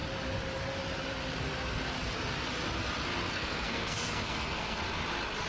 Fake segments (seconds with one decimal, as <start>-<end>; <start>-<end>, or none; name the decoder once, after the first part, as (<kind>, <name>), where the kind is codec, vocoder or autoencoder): 3.3-4.8 (codec, SNAC)